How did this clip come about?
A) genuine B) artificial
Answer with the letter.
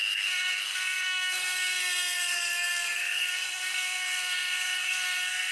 B